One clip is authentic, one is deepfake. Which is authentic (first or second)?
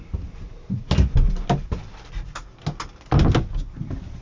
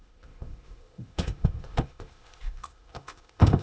first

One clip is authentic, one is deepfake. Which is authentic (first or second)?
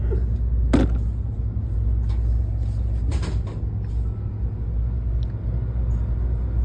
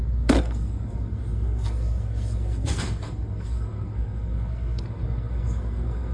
first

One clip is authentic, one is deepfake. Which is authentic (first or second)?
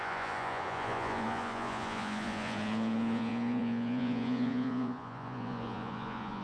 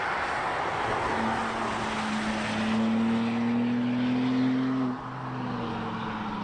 second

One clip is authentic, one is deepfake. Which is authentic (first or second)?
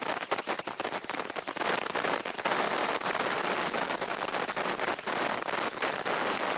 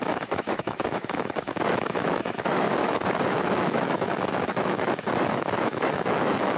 first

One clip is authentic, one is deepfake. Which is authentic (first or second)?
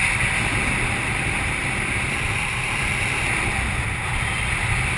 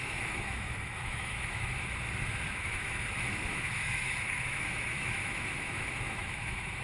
first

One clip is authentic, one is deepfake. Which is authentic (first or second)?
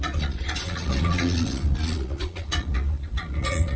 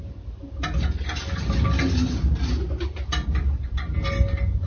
second